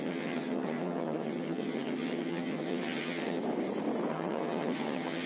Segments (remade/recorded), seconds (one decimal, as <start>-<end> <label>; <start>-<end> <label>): 0.0-3.4 remade; 3.4-4.1 recorded; 4.1-5.3 remade